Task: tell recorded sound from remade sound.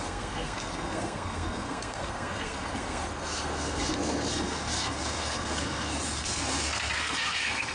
remade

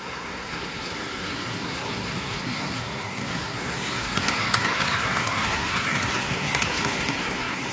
remade